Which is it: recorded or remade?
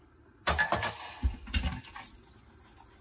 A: recorded